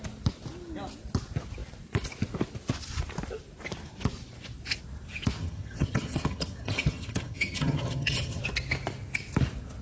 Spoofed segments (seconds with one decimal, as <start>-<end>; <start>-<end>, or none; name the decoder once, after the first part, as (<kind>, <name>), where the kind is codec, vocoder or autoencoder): 5.4-8.4 (vocoder, HiFi-GAN)